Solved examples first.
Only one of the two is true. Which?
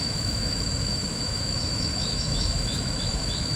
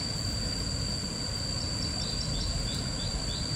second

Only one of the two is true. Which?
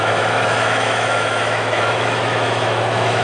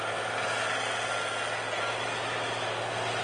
second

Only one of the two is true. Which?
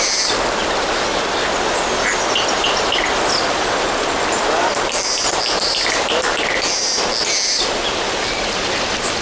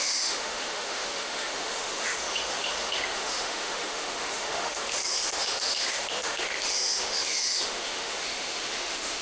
first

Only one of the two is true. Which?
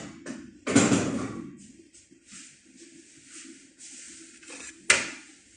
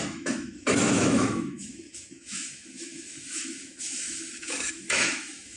first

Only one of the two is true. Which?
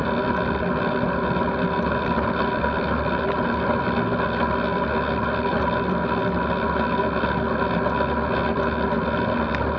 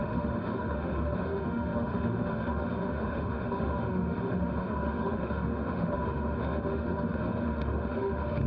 first